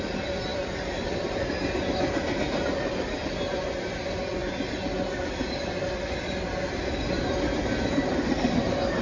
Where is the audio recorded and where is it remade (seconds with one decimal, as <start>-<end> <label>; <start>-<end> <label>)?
0.0-9.0 recorded

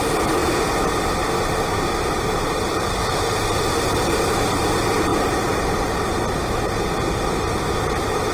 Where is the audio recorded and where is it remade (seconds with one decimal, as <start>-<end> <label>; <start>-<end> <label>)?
0.0-2.7 recorded; 2.7-3.4 remade; 3.4-8.3 recorded

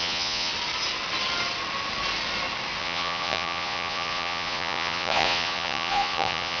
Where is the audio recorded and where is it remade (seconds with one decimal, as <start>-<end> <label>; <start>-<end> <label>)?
0.0-0.5 remade; 0.5-2.8 recorded; 2.8-6.6 remade

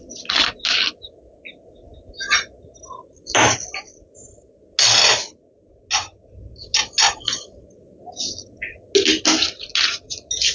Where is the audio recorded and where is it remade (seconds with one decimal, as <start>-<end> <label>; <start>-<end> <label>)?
0.0-10.5 recorded